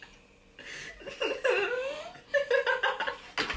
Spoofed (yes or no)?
no